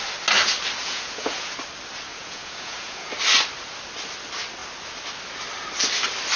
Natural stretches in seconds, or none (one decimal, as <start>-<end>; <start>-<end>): 0.0-0.8; 1.5-2.1; 3.1-6.4